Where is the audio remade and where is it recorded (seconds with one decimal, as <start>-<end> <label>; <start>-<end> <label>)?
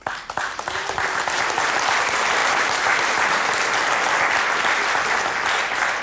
0.0-1.2 remade; 1.2-2.4 recorded; 2.4-3.5 remade; 3.5-6.0 recorded